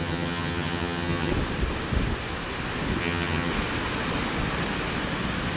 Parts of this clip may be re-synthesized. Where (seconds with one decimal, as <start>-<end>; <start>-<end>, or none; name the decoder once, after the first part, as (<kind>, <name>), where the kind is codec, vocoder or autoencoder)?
0.0-1.3 (vocoder, HiFi-GAN); 3.0-3.5